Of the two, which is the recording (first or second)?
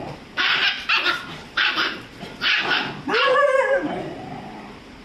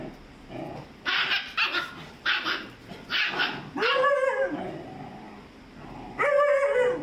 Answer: second